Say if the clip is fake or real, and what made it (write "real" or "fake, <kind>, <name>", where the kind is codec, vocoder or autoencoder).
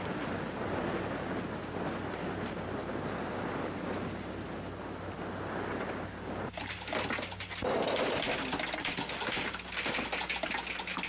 real